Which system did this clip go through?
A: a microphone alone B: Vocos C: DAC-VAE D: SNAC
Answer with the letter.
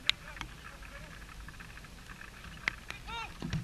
A